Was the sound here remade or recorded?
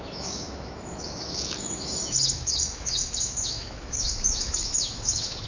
remade